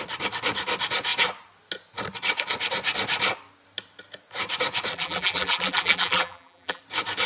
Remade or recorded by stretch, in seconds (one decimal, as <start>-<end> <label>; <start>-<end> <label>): 0.0-4.9 recorded; 4.9-6.8 remade; 6.8-7.3 recorded